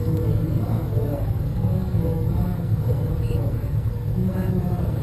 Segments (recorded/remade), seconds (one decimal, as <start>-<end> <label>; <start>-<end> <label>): 0.0-5.0 remade